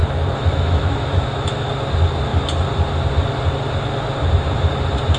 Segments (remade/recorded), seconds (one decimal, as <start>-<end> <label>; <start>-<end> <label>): 0.0-1.7 remade; 1.7-5.2 recorded